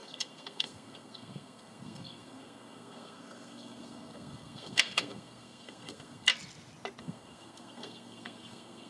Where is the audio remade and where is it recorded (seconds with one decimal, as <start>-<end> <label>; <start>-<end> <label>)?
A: 0.0-6.3 remade; 6.3-7.0 recorded; 7.0-8.9 remade

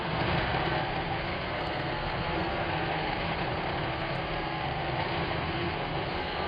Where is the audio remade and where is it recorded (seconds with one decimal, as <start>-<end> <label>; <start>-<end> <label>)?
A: 0.0-3.3 remade; 3.3-3.8 recorded; 3.8-6.5 remade